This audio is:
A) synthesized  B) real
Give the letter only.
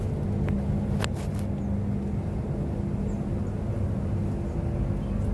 B